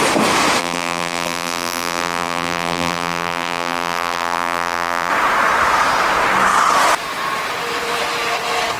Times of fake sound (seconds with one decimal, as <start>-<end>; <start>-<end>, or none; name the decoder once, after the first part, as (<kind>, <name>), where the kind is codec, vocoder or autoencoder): 0.6-5.1 (vocoder, BigVGAN v2)